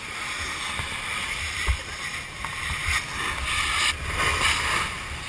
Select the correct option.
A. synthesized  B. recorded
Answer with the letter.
B